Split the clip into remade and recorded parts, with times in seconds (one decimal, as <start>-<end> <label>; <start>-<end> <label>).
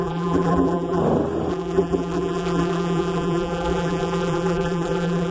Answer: 0.0-1.0 remade; 1.0-1.5 recorded; 1.5-5.3 remade